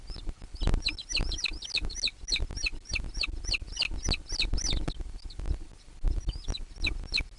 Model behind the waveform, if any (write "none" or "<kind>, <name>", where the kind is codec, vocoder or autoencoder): none